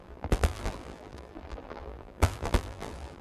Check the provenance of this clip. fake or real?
fake